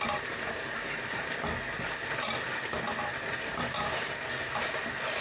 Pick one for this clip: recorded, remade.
recorded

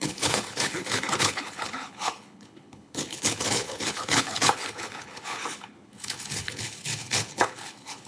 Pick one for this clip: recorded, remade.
remade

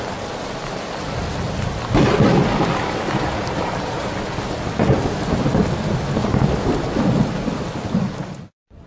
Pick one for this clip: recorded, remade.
recorded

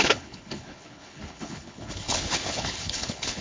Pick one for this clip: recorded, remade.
remade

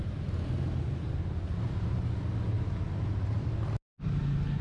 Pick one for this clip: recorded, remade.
recorded